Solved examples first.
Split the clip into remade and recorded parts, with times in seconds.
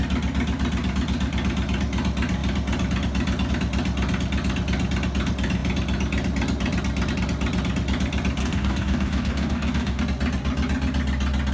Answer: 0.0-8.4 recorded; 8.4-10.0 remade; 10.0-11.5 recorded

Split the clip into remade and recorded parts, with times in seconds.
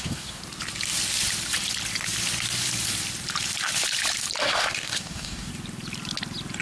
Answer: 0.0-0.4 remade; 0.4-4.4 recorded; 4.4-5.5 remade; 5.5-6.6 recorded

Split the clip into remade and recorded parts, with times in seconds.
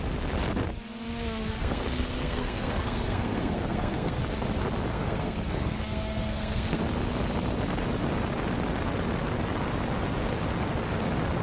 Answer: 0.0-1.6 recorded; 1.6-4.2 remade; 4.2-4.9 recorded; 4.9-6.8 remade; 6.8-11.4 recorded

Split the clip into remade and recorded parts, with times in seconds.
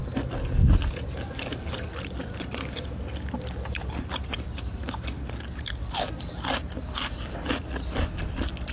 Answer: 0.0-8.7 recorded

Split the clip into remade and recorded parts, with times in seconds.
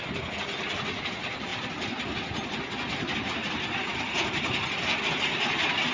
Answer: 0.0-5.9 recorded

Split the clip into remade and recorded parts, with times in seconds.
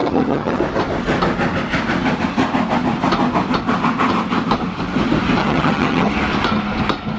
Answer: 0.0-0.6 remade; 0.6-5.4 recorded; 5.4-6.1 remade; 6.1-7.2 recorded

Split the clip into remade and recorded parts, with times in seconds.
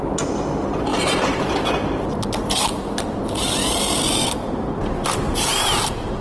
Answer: 0.0-0.9 recorded; 0.9-1.7 remade; 1.7-2.4 recorded; 2.4-3.2 remade; 3.2-4.2 recorded; 4.2-6.2 remade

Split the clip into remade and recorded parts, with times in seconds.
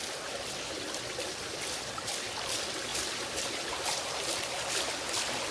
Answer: 0.0-5.5 recorded